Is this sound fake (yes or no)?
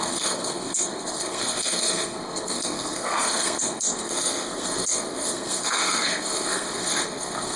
yes